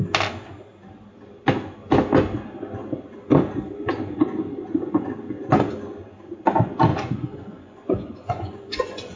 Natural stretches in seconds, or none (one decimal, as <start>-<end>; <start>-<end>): 0.0-6.9